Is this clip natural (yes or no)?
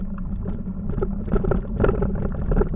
yes